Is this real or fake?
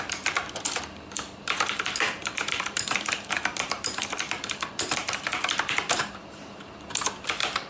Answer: fake